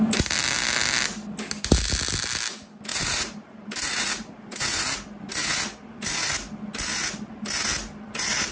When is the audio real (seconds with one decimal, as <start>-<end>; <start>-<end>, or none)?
0.0-2.9; 5.3-8.5